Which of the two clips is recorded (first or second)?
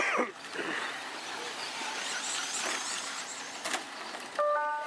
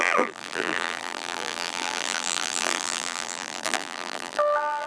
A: first